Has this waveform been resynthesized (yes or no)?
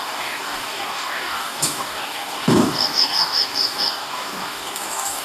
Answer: yes